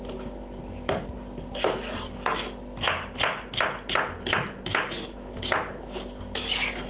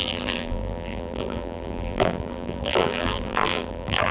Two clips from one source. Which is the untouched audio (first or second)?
first